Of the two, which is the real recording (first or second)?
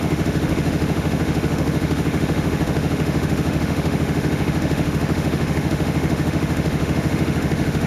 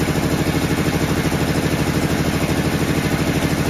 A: second